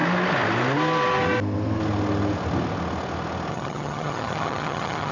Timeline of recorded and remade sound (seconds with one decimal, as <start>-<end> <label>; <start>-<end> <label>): 0.0-3.5 recorded; 3.5-5.1 remade